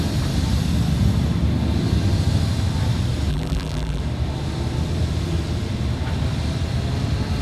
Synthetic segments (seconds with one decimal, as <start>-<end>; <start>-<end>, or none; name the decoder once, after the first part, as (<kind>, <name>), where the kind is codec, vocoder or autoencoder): 3.3-4.0 (vocoder, BigVGAN v2)

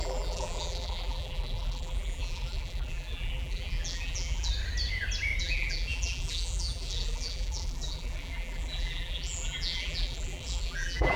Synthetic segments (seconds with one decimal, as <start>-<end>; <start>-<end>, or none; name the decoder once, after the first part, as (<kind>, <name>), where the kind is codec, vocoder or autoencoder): 0.0-4.5 (vocoder, BigVGAN v2); 5.4-11.2

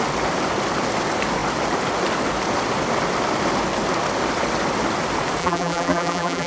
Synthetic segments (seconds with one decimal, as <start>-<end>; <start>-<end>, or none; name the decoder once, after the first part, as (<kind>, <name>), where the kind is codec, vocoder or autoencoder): 5.4-6.5 (vocoder, BigVGAN v2)

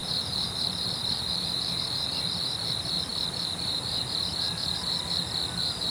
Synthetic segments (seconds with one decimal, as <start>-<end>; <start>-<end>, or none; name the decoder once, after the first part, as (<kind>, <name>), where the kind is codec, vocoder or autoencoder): 0.0-5.9 (vocoder, BigVGAN v2)

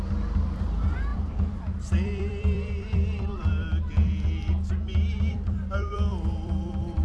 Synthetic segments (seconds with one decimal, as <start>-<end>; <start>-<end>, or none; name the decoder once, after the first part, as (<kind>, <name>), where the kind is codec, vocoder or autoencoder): 1.1-4.7 (vocoder, BigVGAN v2); 5.3-7.0

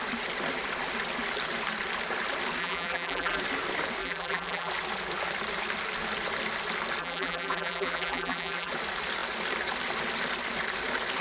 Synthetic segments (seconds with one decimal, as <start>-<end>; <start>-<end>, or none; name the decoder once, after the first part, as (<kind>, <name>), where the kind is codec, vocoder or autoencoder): 2.6-3.4 (vocoder, BigVGAN v2); 4.0-4.7; 7.0-8.7

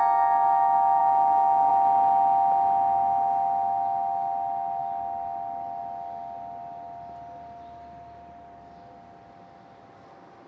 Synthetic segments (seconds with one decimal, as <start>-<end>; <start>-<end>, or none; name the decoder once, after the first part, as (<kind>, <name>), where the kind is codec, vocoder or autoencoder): none